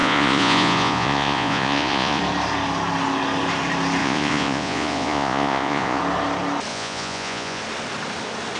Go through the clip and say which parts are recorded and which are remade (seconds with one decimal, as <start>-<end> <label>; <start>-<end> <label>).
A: 0.0-2.2 remade; 2.2-4.0 recorded; 4.0-6.0 remade; 6.0-6.7 recorded; 6.7-7.6 remade; 7.6-8.6 recorded